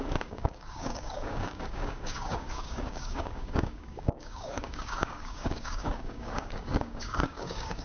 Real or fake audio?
fake